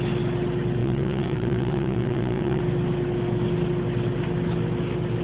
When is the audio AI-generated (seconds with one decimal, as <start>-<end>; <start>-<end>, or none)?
0.8-2.6